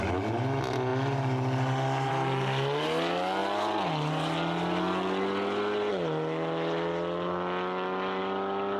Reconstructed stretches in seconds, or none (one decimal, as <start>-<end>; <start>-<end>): none